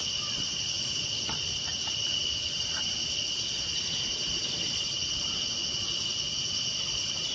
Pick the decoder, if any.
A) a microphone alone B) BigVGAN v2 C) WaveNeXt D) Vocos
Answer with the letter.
A